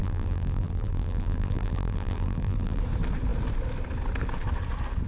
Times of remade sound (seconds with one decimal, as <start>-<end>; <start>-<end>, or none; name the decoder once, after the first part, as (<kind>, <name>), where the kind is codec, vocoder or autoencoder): 0.0-2.8 (vocoder, BigVGAN v2)